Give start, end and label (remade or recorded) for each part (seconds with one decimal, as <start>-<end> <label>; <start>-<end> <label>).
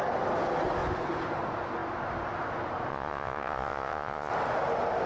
0.0-2.9 recorded; 2.9-4.3 remade; 4.3-5.1 recorded